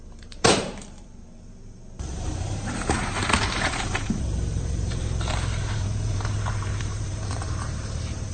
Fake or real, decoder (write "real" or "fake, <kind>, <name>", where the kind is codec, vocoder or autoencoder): fake, vocoder, BigVGAN v2